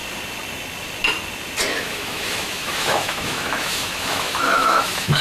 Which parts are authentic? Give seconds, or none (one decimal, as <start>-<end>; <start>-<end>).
0.0-1.8